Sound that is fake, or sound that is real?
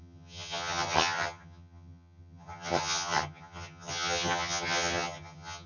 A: fake